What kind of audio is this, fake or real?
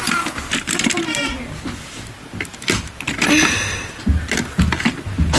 real